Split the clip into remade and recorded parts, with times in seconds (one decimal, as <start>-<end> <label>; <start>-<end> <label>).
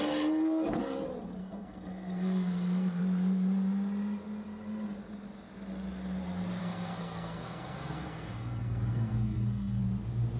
0.0-1.4 recorded; 1.4-3.0 remade; 3.0-6.6 recorded; 6.6-9.8 remade; 9.8-10.4 recorded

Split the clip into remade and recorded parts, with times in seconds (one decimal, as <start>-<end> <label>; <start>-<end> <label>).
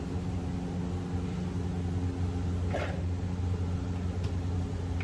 0.0-5.0 recorded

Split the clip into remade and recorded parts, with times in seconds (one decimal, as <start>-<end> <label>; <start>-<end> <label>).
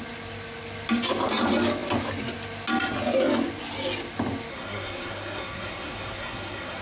0.0-4.5 recorded; 4.5-6.8 remade